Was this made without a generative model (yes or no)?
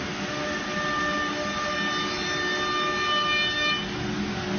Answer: yes